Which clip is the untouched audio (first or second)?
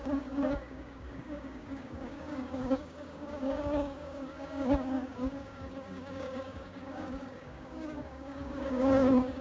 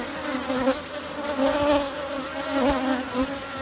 second